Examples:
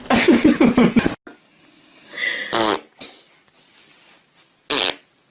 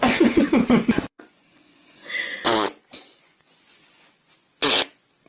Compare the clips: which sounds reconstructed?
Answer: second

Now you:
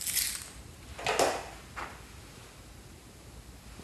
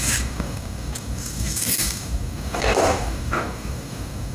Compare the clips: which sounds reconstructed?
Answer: second